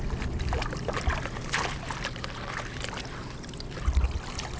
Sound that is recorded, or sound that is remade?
recorded